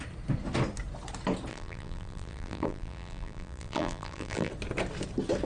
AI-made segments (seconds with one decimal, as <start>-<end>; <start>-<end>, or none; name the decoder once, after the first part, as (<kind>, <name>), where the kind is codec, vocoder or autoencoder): 1.5-4.5 (vocoder, BigVGAN v2)